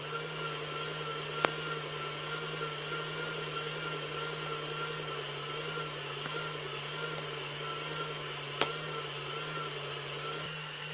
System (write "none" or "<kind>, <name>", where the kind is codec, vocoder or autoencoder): none